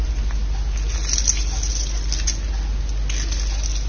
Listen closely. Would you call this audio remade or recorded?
recorded